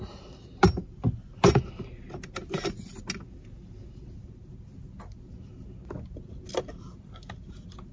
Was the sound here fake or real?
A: real